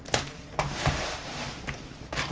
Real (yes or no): no